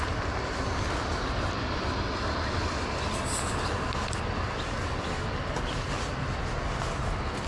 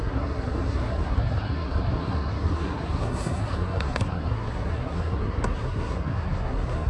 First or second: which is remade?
second